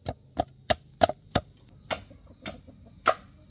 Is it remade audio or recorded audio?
recorded